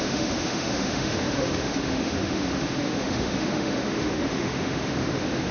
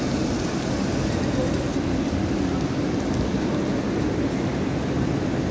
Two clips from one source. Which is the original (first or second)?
second